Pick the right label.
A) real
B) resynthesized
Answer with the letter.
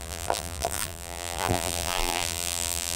B